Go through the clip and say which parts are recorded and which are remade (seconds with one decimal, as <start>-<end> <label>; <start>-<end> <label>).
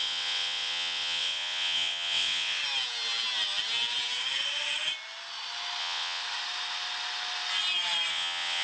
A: 0.0-2.6 remade; 2.6-5.8 recorded; 5.8-6.2 remade; 6.2-8.1 recorded; 8.1-8.6 remade